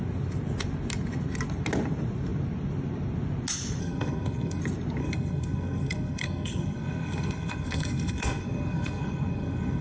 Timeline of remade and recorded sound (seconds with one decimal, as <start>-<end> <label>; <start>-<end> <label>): 0.0-3.8 recorded; 3.8-4.6 remade; 4.6-5.0 recorded; 5.0-9.8 remade